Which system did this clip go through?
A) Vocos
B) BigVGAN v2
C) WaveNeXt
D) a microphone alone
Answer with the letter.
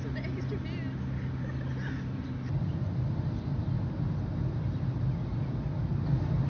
D